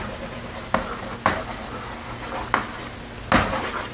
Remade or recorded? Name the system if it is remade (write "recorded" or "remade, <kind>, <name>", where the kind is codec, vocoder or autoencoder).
recorded